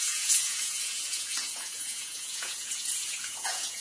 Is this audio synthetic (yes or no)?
yes